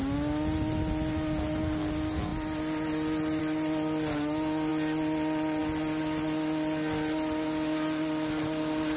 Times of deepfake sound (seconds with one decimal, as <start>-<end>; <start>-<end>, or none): none